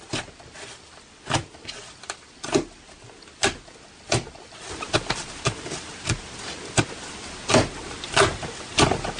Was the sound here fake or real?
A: real